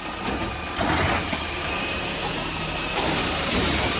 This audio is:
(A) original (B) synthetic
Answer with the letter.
A